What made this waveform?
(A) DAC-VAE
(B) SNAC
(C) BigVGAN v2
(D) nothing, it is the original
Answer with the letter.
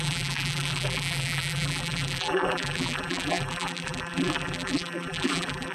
C